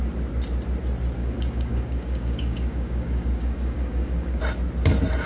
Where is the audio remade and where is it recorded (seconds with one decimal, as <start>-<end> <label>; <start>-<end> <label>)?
0.0-1.2 recorded; 1.2-4.4 remade; 4.4-5.3 recorded

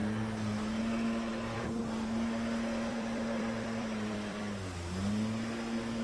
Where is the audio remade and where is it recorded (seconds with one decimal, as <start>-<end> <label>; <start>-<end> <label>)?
0.0-1.3 recorded; 1.3-1.8 remade; 1.8-2.9 recorded; 2.9-4.4 remade; 4.4-6.0 recorded

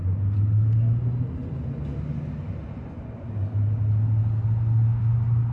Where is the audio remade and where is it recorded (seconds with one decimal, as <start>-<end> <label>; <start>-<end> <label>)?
0.0-5.5 recorded

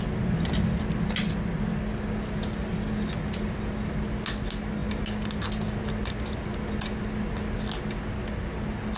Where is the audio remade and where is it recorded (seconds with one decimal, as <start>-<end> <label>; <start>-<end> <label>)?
0.0-9.0 recorded

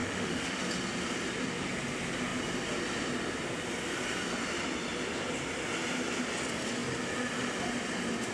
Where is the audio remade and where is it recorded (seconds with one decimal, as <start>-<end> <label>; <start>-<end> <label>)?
0.0-0.6 remade; 0.6-8.3 recorded